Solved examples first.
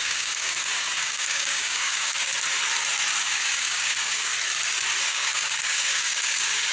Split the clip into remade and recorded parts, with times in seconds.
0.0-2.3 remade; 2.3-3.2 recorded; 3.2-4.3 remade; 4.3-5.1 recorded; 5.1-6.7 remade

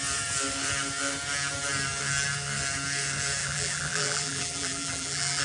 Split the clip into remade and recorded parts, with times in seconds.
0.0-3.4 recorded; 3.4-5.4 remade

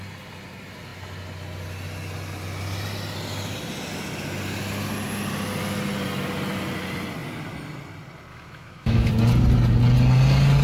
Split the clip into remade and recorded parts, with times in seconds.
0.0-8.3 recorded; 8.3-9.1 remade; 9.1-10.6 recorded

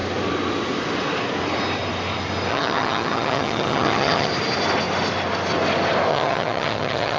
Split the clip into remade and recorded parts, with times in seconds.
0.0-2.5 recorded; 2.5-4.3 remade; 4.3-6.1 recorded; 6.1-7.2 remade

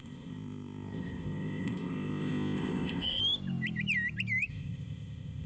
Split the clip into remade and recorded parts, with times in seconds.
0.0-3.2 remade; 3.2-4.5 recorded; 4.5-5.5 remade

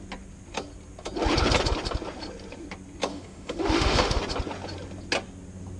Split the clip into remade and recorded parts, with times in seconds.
0.0-3.1 recorded; 3.1-4.2 remade; 4.2-5.8 recorded